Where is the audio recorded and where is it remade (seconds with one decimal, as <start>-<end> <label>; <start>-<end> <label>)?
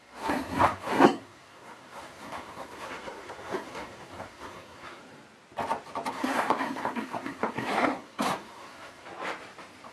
0.0-5.0 remade; 5.0-6.1 recorded; 6.1-9.1 remade; 9.1-9.9 recorded